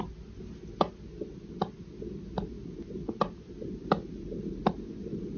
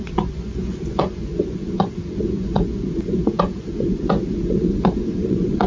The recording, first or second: first